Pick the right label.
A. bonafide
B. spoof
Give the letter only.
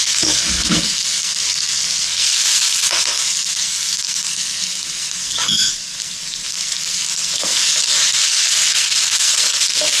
B